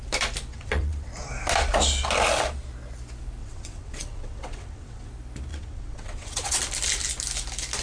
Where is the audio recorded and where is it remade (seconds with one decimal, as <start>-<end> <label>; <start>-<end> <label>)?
0.0-0.5 recorded; 0.5-1.1 remade; 1.1-3.4 recorded; 3.4-5.1 remade; 5.1-5.5 recorded; 5.5-6.6 remade; 6.6-7.8 recorded